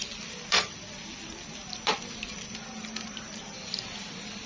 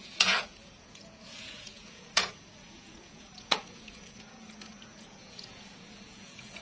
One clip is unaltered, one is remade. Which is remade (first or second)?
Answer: second